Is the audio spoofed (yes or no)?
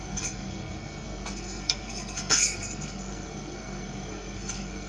yes